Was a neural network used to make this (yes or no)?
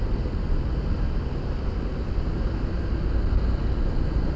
no